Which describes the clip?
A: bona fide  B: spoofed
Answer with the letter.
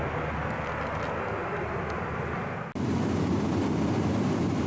A